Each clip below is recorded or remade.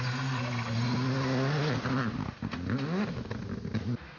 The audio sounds recorded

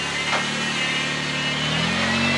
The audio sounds recorded